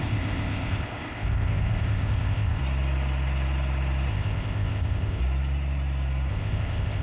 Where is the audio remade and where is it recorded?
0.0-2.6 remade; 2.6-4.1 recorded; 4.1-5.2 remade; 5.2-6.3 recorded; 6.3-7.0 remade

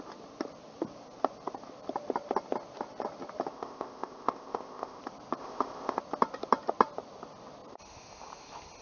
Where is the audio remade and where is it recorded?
0.0-3.5 recorded; 3.5-5.0 remade; 5.0-5.4 recorded; 5.4-6.0 remade; 6.0-8.8 recorded

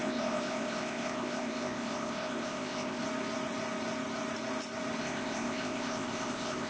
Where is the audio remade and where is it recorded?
0.0-3.0 remade; 3.0-5.0 recorded; 5.0-6.7 remade